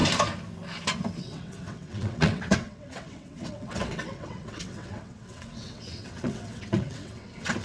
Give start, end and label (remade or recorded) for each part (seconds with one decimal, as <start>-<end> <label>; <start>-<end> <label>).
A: 0.0-1.2 recorded; 1.2-7.6 remade